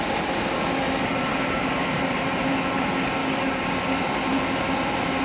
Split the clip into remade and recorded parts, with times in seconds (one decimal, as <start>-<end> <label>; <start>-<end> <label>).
0.0-1.3 recorded; 1.3-2.0 remade; 2.0-3.2 recorded; 3.2-3.8 remade; 3.8-5.2 recorded

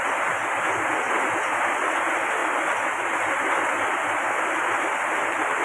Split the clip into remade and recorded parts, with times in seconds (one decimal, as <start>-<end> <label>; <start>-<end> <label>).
0.0-5.6 recorded

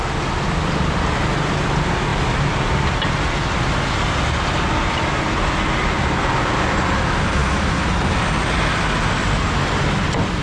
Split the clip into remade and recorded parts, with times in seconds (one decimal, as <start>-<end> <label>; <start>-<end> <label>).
0.0-10.4 recorded

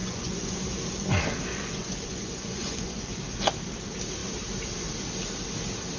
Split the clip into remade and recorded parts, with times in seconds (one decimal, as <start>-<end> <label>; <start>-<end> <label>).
0.0-0.6 remade; 0.6-1.5 recorded; 1.5-3.2 remade; 3.2-6.0 recorded

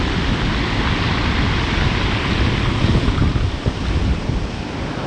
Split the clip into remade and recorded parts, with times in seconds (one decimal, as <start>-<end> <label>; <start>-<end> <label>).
0.0-5.1 recorded

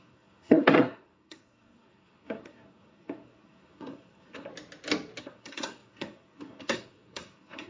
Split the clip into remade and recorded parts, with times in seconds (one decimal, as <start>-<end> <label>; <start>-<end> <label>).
0.0-4.5 remade; 4.5-5.2 recorded; 5.2-7.7 remade

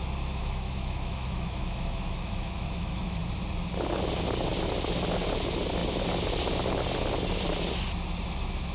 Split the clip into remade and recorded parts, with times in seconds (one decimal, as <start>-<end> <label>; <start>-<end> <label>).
0.0-0.4 recorded; 0.4-3.2 remade; 3.2-8.7 recorded

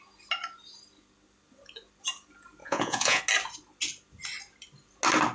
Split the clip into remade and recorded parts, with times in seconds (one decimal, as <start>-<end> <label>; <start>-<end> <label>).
0.0-2.6 recorded; 2.6-3.2 remade; 3.2-5.3 recorded